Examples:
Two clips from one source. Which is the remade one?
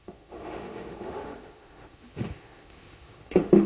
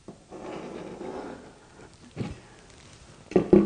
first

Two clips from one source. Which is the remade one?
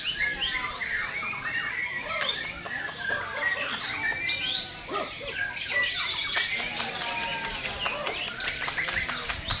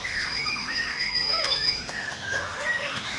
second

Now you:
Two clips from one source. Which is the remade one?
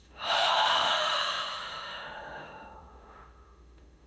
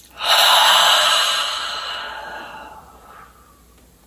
first